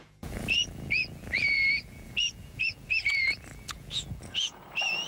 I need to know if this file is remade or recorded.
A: remade